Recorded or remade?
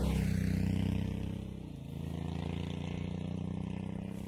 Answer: recorded